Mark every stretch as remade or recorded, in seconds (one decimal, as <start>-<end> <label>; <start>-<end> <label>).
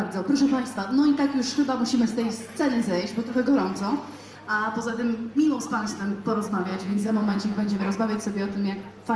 0.0-6.7 recorded; 6.7-7.8 remade; 7.8-9.2 recorded